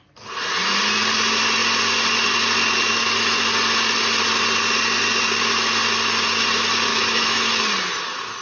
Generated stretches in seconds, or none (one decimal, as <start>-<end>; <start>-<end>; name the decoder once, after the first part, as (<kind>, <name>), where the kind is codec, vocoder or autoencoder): 6.9-7.6 (autoencoder, DAC-VAE)